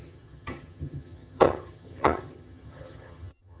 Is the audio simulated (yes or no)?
yes